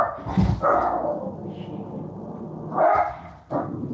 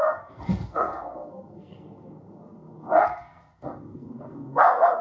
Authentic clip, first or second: first